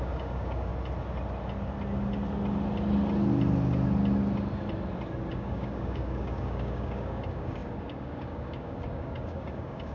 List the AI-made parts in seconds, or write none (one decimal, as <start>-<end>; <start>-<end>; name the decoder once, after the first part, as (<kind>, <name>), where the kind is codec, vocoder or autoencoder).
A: 0.0-0.7 (codec, DAC); 5.3-9.9